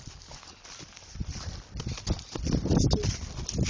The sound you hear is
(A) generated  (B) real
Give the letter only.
B